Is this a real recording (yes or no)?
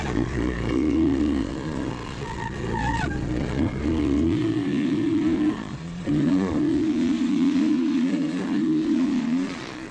no